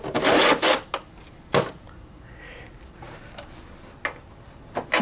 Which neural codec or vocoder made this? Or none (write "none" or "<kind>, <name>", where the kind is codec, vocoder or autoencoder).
none